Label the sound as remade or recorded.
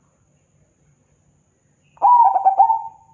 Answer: recorded